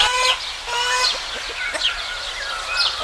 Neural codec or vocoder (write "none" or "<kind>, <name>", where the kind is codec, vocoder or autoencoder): none